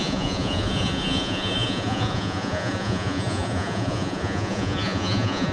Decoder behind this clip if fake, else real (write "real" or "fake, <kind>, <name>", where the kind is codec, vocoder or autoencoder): fake, vocoder, Vocos